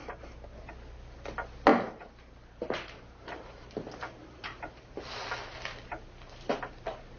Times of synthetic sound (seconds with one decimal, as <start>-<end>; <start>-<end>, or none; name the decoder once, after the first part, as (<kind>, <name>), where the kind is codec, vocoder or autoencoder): 0.0-0.7 (vocoder, BigVGAN v2); 1.7-5.0